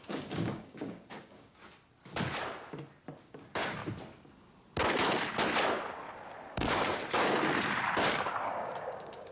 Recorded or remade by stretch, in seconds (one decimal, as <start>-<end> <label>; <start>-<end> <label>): 0.0-1.6 remade; 1.6-3.2 recorded; 3.2-3.8 remade; 3.8-6.5 recorded; 6.5-7.0 remade; 7.0-8.5 recorded; 8.5-9.3 remade